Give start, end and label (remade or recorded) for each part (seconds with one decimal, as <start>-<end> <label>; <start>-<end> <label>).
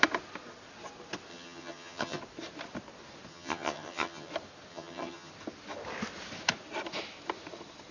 0.0-1.3 recorded; 1.3-2.2 remade; 2.2-3.3 recorded; 3.3-4.3 remade; 4.3-4.7 recorded; 4.7-5.3 remade; 5.3-7.9 recorded